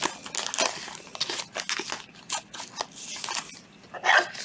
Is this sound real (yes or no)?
yes